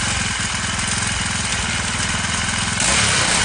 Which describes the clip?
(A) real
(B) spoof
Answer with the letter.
A